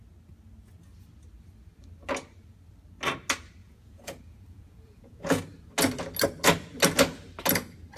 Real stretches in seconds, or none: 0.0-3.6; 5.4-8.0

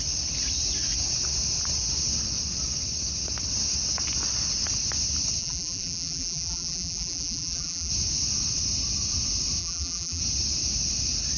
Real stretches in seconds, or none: 0.0-5.4; 7.9-9.6; 10.2-11.4

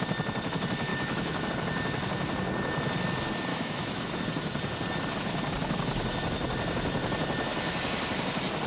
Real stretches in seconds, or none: 0.0-0.9; 1.5-3.5; 4.2-8.7